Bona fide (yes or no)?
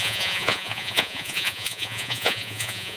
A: no